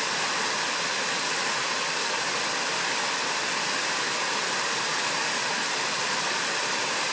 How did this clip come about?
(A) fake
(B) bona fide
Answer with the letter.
B